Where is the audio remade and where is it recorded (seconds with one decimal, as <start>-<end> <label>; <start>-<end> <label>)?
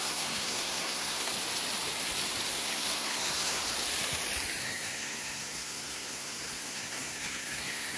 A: 0.0-1.3 remade; 1.3-2.5 recorded; 2.5-3.6 remade; 3.6-4.6 recorded; 4.6-8.0 remade